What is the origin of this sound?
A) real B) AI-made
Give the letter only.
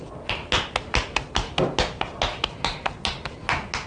A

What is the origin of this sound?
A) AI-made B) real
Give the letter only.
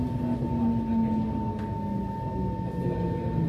B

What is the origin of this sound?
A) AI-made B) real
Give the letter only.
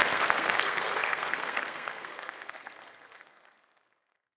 A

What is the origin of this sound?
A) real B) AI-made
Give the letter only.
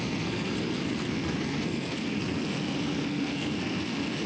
B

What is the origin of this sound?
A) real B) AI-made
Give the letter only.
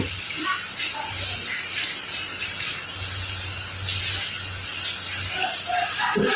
A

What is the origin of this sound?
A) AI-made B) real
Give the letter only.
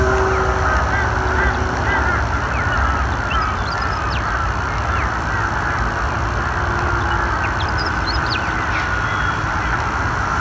B